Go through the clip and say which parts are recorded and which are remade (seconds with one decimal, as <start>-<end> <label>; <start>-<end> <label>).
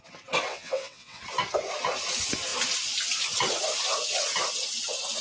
0.0-0.5 recorded; 0.5-1.2 remade; 1.2-5.2 recorded